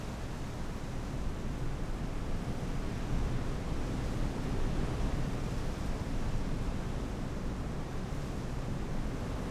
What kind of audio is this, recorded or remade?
recorded